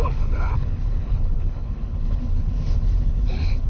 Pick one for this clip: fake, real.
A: fake